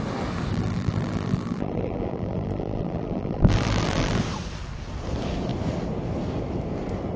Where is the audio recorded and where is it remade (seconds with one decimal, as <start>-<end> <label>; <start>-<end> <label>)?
0.0-0.5 recorded; 0.5-4.2 remade; 4.2-7.2 recorded